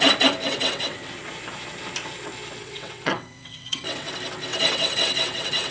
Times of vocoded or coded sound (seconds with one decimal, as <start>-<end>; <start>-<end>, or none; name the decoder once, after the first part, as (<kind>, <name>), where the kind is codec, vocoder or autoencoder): 0.4-1.1 (vocoder, WaveNeXt); 2.6-4.1; 4.5-5.7